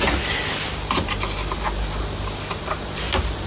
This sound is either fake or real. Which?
real